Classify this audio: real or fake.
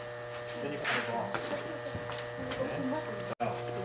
real